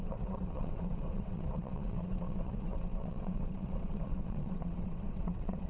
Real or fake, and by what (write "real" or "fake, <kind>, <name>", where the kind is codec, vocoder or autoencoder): fake, vocoder, WaveNeXt